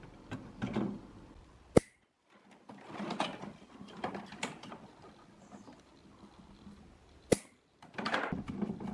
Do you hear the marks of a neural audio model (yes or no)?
no